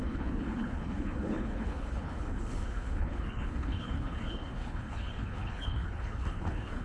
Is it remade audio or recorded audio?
remade